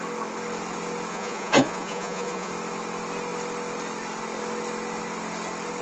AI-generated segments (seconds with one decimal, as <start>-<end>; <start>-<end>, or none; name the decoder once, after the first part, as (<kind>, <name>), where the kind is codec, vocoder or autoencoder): 1.1-2.5 (vocoder, Vocos)